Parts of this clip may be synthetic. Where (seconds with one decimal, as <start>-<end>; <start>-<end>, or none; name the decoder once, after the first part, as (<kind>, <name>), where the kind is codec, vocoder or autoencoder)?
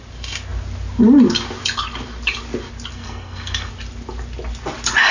2.9-3.7 (codec, SNAC)